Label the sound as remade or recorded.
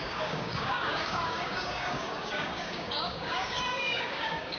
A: remade